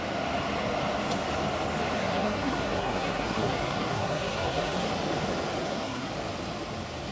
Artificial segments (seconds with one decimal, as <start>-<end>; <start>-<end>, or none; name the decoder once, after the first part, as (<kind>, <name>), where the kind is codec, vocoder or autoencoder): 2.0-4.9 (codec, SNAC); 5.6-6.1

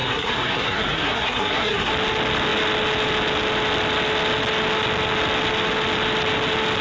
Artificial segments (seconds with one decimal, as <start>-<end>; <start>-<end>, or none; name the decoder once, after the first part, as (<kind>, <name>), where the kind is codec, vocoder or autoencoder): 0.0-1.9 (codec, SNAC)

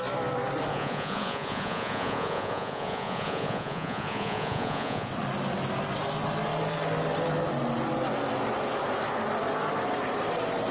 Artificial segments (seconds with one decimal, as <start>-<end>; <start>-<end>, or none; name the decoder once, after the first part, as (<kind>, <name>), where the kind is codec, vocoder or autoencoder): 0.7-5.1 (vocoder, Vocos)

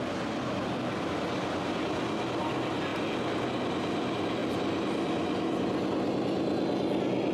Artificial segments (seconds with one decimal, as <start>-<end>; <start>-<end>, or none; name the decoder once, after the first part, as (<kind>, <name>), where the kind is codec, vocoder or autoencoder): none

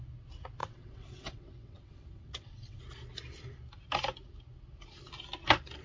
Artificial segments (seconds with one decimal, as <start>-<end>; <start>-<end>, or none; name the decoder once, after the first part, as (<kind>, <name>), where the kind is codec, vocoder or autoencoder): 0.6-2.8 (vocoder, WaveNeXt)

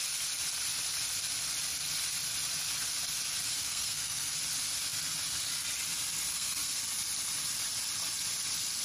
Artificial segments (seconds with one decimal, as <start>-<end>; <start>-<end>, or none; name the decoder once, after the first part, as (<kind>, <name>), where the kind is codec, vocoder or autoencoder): 3.5-4.3 (codec, SNAC); 6.3-6.8